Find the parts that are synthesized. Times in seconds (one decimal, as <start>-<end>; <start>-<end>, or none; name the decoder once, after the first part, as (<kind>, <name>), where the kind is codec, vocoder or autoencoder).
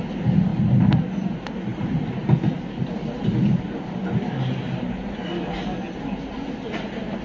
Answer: none